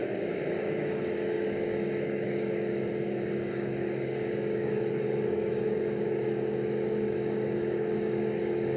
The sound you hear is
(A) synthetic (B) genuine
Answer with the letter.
A